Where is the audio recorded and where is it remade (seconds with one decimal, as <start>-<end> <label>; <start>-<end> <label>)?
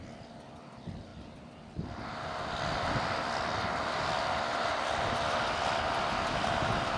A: 0.0-7.0 recorded